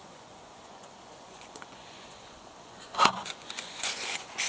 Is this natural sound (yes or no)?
no